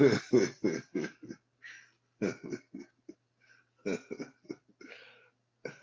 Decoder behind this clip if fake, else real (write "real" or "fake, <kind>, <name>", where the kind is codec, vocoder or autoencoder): real